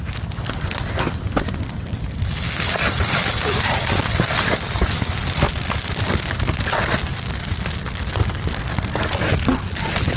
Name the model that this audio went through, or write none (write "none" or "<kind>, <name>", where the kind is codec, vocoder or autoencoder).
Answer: none